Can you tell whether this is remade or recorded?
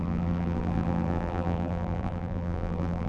remade